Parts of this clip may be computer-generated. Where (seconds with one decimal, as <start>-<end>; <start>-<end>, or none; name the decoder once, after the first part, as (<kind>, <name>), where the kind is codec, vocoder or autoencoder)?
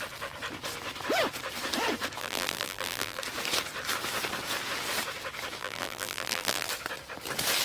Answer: 2.2-3.2 (vocoder, BigVGAN v2); 5.6-6.7